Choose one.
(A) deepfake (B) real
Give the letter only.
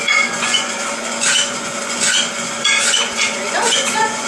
A